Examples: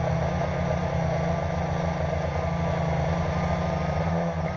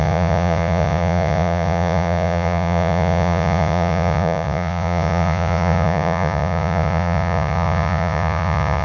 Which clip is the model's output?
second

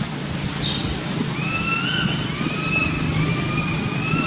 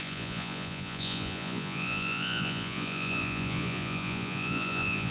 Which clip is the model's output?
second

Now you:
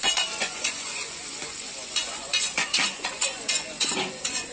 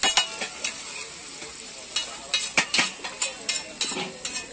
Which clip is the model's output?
first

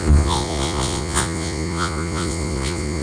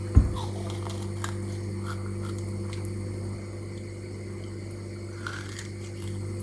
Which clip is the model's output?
first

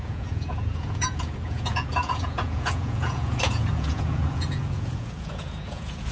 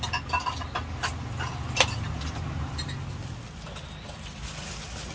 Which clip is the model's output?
first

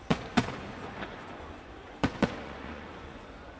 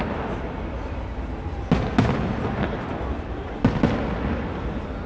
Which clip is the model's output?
first